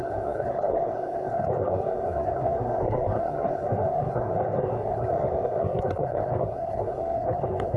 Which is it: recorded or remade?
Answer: remade